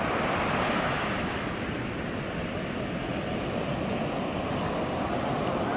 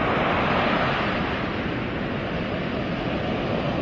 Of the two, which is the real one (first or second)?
second